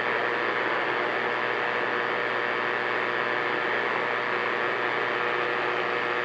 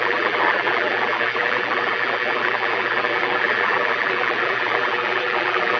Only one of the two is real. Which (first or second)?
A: first